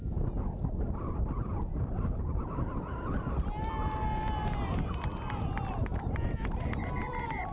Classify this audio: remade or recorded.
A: recorded